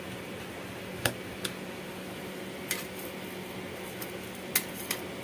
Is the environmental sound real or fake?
real